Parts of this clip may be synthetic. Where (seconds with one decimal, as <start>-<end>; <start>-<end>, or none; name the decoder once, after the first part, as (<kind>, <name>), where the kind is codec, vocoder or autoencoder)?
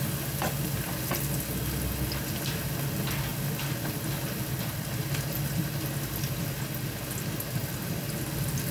3.3-5.5 (vocoder, BigVGAN v2); 7.6-8.7